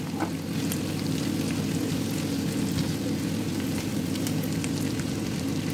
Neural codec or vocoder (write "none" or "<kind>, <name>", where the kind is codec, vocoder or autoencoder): none